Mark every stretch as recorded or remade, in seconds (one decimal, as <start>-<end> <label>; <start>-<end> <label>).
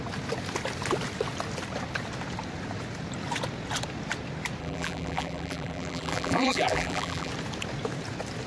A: 0.0-4.6 recorded; 4.6-7.3 remade; 7.3-8.5 recorded